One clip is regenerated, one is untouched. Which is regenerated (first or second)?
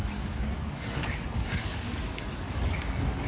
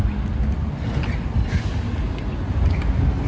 first